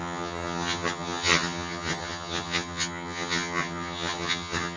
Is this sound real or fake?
fake